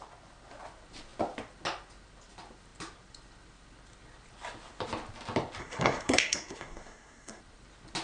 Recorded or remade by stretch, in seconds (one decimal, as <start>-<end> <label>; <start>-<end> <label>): 0.0-5.6 recorded; 5.6-7.4 remade; 7.4-8.0 recorded